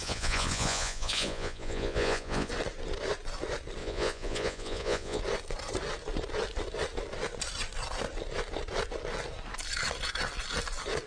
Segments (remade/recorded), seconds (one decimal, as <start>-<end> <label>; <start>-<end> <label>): 0.0-2.5 remade; 2.5-3.8 recorded; 3.8-5.2 remade; 5.2-11.1 recorded